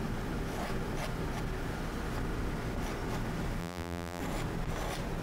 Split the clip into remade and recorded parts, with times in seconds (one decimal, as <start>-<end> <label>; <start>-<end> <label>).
0.0-3.6 recorded; 3.6-4.2 remade; 4.2-5.2 recorded